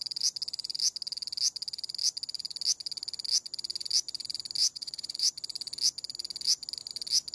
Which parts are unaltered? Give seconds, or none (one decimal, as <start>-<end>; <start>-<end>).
0.0-4.6; 5.3-7.3